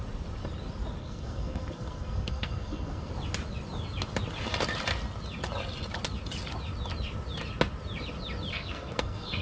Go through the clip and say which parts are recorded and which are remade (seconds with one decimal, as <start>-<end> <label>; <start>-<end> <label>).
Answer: 0.0-1.0 recorded; 1.0-3.1 remade; 3.1-8.5 recorded; 8.5-9.4 remade